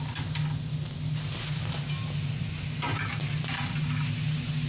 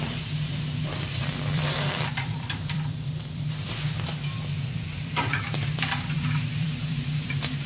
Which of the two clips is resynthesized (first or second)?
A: second